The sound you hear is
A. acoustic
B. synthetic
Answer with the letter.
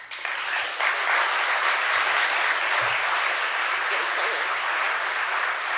A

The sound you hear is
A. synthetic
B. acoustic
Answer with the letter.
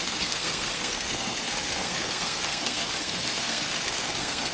A